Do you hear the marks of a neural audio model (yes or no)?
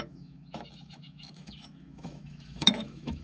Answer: yes